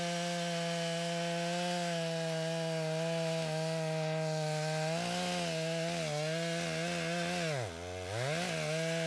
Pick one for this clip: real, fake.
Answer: real